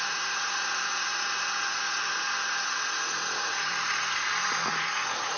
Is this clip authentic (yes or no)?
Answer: no